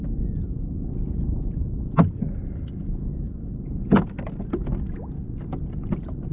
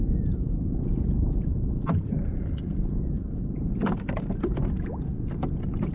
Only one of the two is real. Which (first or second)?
first